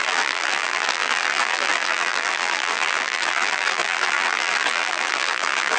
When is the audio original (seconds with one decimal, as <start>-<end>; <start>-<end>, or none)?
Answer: none